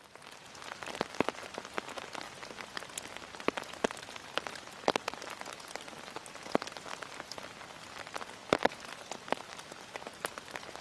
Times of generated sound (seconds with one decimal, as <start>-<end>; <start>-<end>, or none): none